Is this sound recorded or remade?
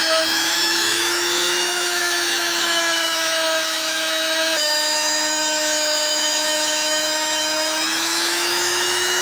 remade